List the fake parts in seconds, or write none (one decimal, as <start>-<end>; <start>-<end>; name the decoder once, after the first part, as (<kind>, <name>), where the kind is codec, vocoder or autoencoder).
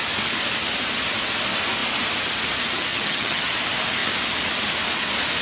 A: 2.9-3.5 (vocoder, HiFi-GAN)